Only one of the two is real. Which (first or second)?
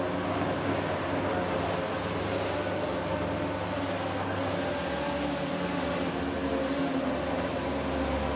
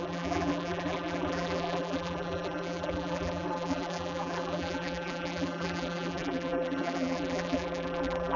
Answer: first